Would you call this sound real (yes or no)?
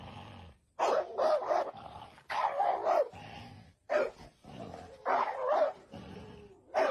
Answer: yes